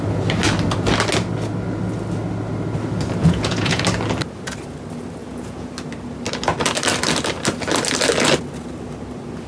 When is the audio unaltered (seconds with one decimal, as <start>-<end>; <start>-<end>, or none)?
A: 0.0-3.2; 3.8-5.2; 5.7-9.5